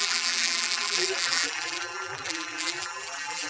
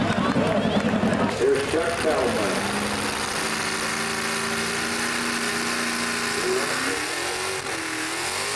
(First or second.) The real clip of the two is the second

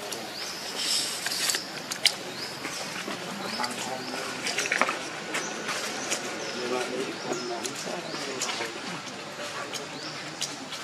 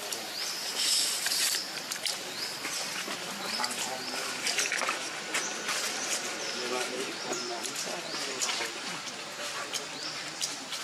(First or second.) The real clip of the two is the first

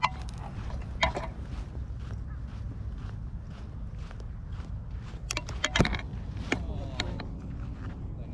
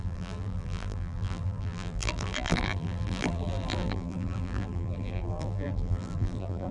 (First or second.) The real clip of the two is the first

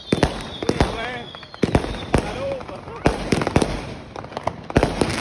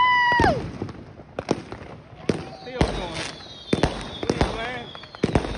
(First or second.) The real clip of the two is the second